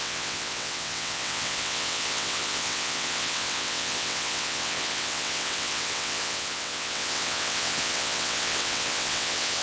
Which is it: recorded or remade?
remade